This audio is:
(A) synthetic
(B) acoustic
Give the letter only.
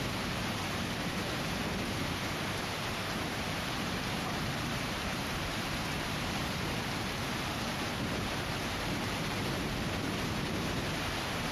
A